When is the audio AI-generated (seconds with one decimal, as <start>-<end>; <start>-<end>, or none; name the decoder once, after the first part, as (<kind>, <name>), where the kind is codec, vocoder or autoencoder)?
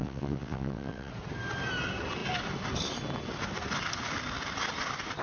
0.0-1.1 (vocoder, WaveNeXt)